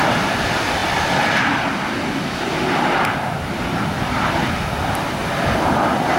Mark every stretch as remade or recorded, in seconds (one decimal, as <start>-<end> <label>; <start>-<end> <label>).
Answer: 0.0-6.2 recorded